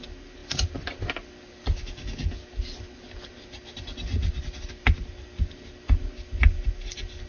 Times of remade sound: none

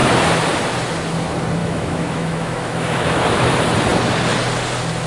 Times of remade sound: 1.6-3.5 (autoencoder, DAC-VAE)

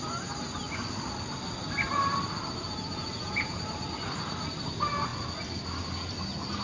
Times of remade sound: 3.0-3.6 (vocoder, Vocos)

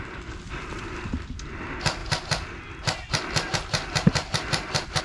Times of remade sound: 2.0-5.0 (vocoder, BigVGAN v2)

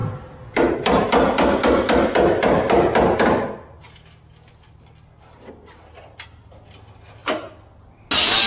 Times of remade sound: none

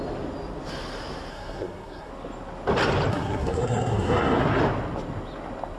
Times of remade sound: 1.3-2.1 (codec, SNAC); 3.1-4.6